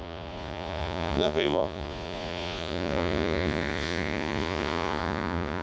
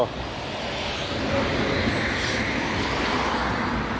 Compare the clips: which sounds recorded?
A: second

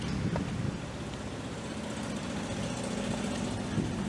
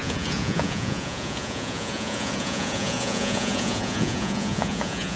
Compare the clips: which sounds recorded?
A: first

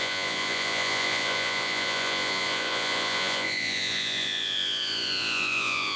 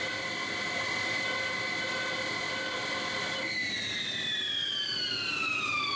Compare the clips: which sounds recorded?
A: second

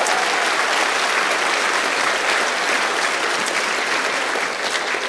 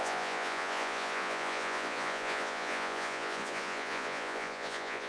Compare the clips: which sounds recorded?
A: first